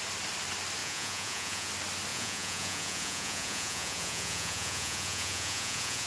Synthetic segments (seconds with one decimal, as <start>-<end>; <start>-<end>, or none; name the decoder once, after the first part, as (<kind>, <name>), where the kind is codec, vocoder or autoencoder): 0.8-1.7 (vocoder, Vocos); 2.1-6.1